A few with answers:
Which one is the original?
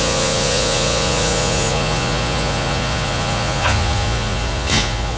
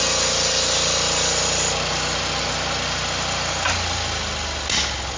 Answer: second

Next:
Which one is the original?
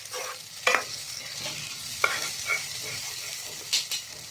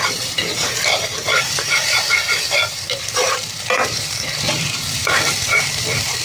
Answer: first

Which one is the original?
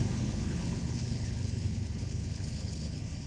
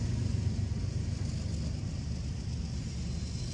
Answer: second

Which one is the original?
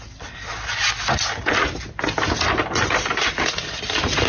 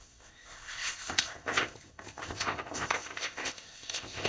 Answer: first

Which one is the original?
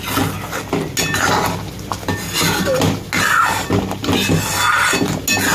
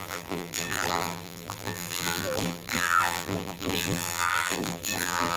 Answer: first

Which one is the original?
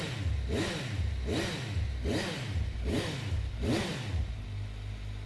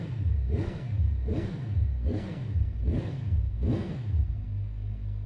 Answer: first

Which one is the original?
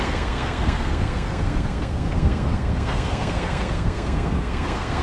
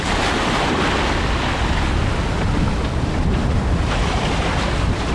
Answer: second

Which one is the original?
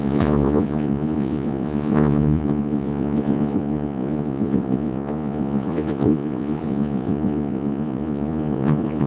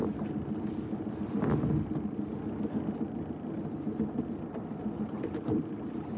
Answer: second